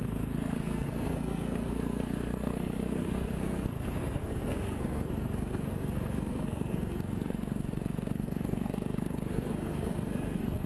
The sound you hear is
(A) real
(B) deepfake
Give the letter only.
B